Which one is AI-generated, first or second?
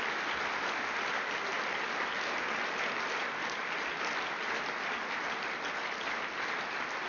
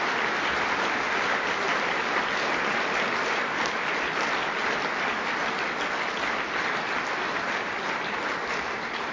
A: second